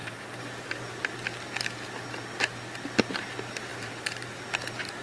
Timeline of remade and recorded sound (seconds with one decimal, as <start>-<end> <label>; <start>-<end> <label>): 0.0-0.8 remade; 0.8-3.7 recorded; 3.7-4.4 remade; 4.4-5.0 recorded